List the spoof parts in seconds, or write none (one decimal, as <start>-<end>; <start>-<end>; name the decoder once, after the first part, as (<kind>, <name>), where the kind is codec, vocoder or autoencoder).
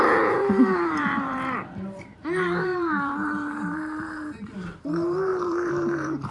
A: 0.0-6.3 (vocoder, BigVGAN v2)